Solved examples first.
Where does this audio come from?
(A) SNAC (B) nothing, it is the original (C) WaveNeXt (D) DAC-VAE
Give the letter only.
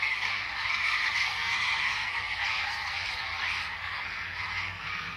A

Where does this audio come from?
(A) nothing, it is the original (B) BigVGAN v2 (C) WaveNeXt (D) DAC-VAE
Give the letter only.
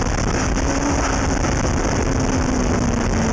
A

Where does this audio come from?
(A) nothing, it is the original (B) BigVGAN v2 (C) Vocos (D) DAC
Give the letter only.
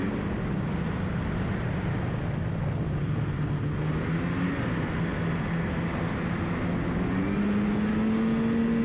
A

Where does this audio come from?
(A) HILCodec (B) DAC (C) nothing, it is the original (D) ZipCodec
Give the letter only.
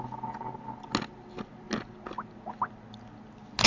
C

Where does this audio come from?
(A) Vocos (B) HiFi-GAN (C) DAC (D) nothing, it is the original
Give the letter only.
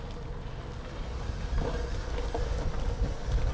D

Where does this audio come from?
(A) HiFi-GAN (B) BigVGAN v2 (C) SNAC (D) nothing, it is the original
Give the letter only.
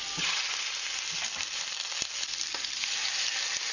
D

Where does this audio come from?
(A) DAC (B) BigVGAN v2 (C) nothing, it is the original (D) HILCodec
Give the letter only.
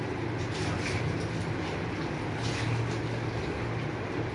C